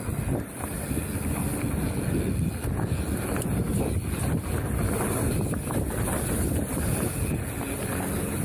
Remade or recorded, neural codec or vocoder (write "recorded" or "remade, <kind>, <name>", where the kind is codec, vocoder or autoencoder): recorded